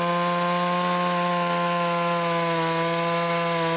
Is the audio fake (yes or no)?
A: no